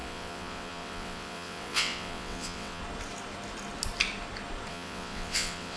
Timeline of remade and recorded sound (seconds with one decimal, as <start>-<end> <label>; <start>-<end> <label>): 0.0-2.8 remade; 2.8-4.7 recorded; 4.7-5.8 remade